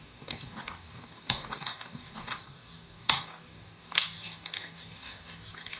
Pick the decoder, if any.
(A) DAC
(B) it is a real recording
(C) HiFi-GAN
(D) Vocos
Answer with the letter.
A